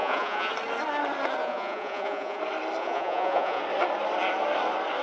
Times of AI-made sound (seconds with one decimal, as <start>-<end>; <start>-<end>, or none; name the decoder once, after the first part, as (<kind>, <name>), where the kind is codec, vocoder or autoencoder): 0.0-0.5 (vocoder, Vocos); 1.4-2.4; 2.8-3.6